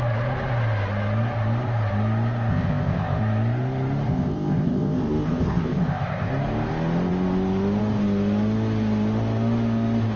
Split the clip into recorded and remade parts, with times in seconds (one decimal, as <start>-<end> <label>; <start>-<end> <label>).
0.0-2.5 recorded; 2.5-3.2 remade; 3.2-4.1 recorded; 4.1-6.3 remade; 6.3-10.2 recorded